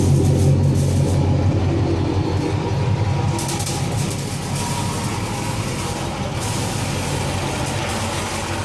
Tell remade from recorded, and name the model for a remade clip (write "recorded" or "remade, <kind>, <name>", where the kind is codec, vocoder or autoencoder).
recorded